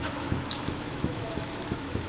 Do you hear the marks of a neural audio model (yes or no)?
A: yes